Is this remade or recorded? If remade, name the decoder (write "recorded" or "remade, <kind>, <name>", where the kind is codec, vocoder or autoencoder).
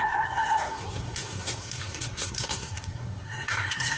remade, codec, SNAC